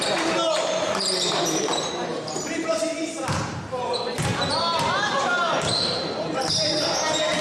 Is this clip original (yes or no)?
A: no